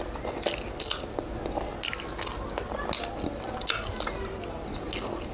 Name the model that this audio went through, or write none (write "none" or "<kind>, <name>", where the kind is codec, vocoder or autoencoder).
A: none